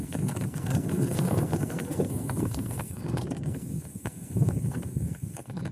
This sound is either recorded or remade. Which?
remade